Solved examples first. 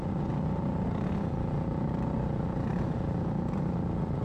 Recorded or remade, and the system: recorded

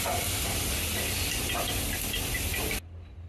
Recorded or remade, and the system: recorded